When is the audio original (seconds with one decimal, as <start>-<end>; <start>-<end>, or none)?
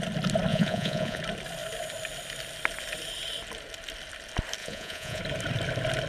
0.0-0.5; 1.2-4.6; 5.2-6.1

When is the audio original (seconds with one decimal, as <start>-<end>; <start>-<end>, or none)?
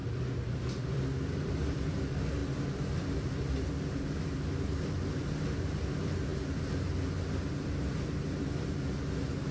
1.9-2.4; 3.4-9.5